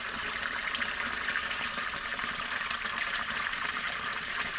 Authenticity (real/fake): fake